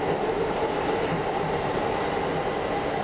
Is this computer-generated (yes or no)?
no